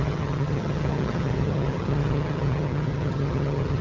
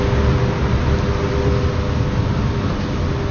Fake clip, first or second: first